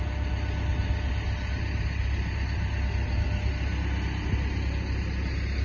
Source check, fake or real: real